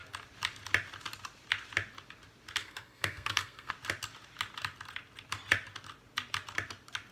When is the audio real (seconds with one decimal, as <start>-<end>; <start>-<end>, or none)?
0.0-2.6; 3.7-7.1